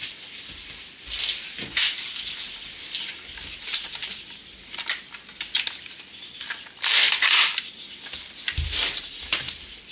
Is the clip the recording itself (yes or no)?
yes